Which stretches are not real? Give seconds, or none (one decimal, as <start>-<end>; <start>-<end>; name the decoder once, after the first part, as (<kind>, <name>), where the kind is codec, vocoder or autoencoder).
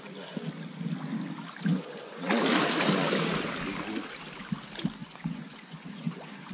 1.7-2.3 (vocoder, Vocos); 5.0-6.5